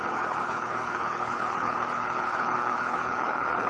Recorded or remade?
remade